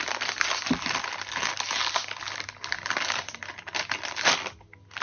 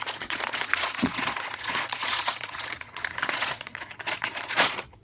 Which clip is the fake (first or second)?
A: second